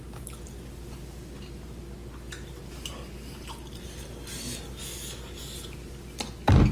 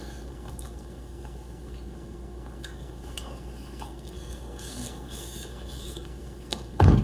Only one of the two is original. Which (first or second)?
first